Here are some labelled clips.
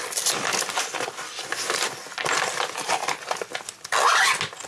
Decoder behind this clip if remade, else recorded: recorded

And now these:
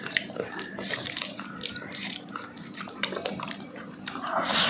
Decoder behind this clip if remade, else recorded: remade, vocoder, BigVGAN v2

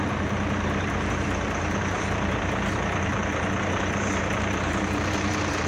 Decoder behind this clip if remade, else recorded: remade, vocoder, BigVGAN v2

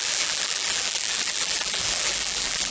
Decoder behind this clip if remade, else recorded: remade, vocoder, BigVGAN v2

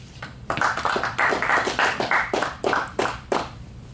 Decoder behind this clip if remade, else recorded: remade, vocoder, BigVGAN v2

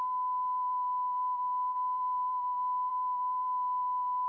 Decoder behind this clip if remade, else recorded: remade, vocoder, BigVGAN v2